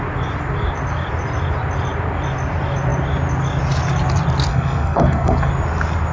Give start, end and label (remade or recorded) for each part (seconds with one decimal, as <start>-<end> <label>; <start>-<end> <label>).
0.0-4.5 recorded; 4.5-5.5 remade; 5.5-6.1 recorded